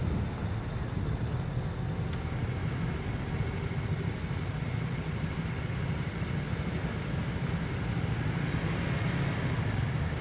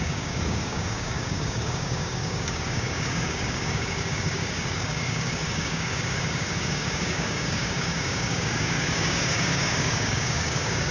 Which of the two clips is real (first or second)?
first